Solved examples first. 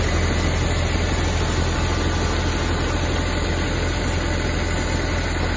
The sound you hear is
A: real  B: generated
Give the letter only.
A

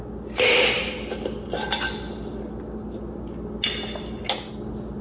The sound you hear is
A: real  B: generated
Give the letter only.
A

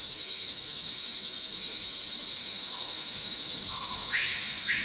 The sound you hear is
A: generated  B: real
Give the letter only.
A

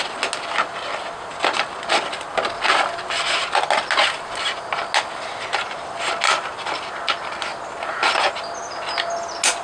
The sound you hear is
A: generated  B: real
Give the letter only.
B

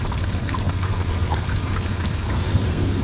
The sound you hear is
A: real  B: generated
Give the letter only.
B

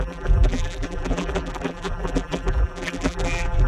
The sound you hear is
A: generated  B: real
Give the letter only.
A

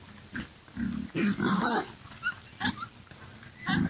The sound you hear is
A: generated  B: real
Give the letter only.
B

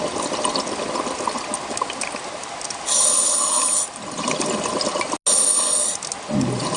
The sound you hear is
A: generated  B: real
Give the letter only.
B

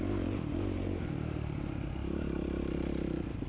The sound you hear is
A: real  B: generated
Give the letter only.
B